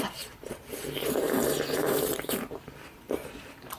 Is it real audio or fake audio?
fake